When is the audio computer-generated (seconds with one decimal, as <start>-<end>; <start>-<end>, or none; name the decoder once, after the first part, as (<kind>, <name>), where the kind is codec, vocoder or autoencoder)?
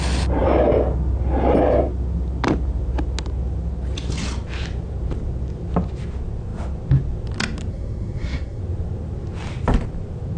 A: 7.7-8.6 (codec, SNAC)